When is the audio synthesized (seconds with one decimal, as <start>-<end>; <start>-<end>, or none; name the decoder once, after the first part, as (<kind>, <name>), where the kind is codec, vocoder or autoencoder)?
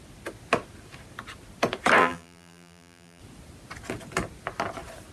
2.0-3.2 (vocoder, BigVGAN v2)